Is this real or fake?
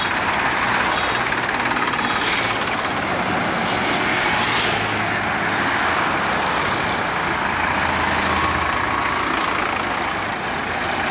real